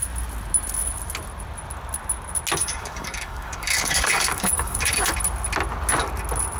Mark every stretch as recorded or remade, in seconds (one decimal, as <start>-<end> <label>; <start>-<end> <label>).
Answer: 0.0-2.6 recorded; 2.6-5.1 remade; 5.1-6.6 recorded